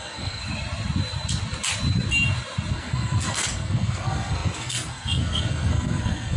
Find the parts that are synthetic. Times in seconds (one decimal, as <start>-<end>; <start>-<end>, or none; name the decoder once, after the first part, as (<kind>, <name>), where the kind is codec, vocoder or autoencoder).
0.0-0.4 (codec, SNAC); 2.7-6.4